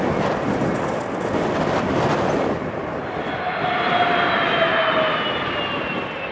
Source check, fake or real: real